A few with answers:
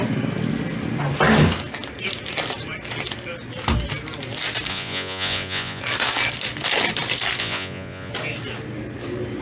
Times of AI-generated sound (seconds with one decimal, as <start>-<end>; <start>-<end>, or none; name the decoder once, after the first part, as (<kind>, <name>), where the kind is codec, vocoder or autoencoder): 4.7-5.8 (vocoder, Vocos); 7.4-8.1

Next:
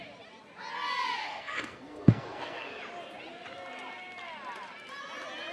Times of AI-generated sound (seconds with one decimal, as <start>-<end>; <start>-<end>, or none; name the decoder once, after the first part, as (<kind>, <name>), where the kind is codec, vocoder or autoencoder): 1.2-2.8 (codec, SNAC)

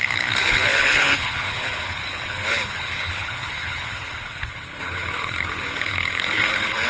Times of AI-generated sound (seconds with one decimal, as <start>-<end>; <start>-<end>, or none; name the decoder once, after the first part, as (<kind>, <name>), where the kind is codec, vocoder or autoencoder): 0.0-6.9 (codec, HILCodec)

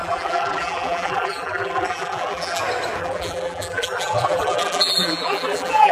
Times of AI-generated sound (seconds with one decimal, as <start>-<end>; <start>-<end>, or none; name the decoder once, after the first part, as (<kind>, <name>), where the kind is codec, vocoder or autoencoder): 0.0-2.6 (vocoder, BigVGAN v2); 3.0-5.9

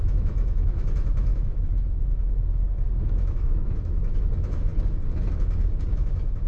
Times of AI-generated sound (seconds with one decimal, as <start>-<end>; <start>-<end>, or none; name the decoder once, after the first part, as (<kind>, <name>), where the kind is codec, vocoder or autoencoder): 0.0-4.7 (autoencoder, DAC-VAE); 5.9-6.5

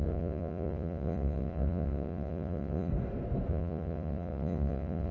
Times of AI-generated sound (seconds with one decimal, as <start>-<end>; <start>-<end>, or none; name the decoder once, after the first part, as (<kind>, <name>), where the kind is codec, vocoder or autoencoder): 0.0-2.9 (vocoder, Vocos); 3.5-5.1